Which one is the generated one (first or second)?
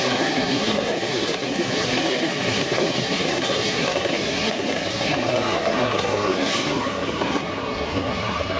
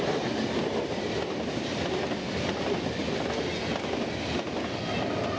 first